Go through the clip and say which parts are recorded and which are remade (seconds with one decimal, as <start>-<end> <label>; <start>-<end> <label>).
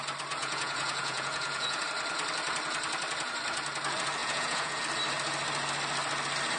0.0-0.4 recorded; 0.4-1.8 remade; 1.8-4.2 recorded; 4.2-4.8 remade; 4.8-6.6 recorded